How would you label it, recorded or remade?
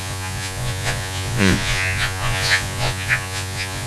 remade